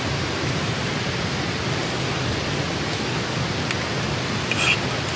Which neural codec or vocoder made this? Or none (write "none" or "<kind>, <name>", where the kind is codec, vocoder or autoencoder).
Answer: none